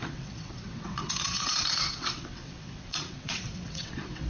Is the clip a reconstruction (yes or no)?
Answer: yes